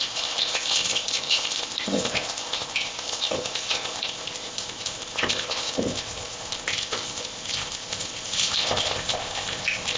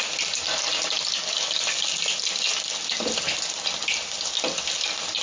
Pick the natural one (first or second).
second